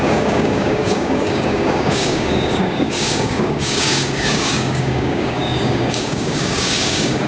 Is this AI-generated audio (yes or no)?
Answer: yes